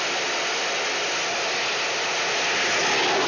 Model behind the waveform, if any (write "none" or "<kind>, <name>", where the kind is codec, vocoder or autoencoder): none